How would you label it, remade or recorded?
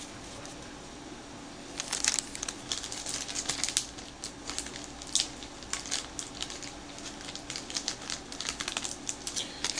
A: recorded